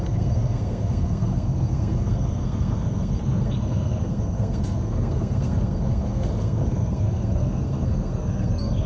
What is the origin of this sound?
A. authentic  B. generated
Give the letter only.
B